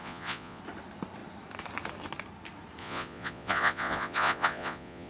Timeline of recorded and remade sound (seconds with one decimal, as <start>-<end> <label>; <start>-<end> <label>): 0.0-0.6 remade; 0.6-2.8 recorded; 2.8-5.1 remade